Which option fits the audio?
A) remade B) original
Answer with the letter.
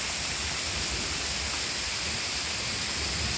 B